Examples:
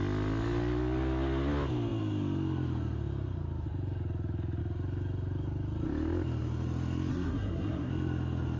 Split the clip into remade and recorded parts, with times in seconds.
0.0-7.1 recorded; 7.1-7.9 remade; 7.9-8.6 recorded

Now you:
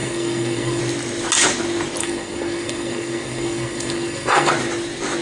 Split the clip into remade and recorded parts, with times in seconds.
0.0-0.8 remade; 0.8-2.0 recorded; 2.0-4.5 remade; 4.5-5.2 recorded